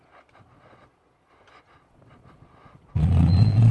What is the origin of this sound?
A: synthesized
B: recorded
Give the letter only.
A